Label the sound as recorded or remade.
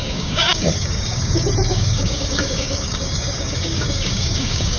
remade